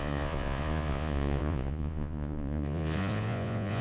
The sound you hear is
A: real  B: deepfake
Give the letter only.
B